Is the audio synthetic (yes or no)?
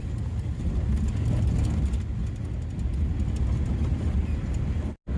no